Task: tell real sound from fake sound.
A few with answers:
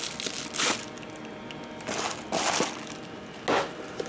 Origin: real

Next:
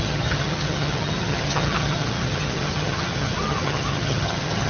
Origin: fake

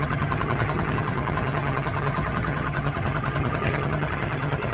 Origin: fake